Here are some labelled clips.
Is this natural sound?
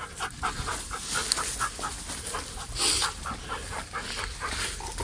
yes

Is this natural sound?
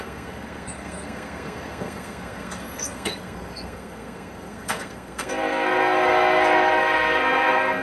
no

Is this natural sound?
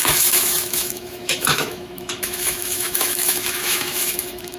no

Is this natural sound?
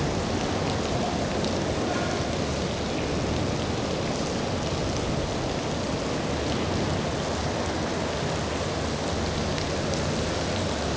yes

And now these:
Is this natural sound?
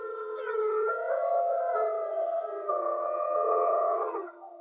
no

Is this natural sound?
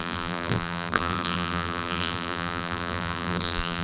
no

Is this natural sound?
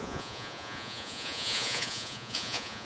no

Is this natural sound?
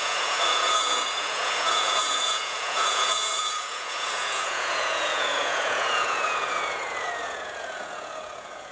no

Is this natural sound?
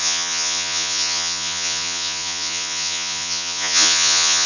no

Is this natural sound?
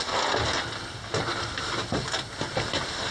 yes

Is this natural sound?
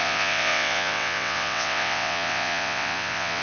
no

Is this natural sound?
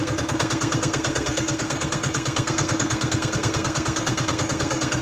no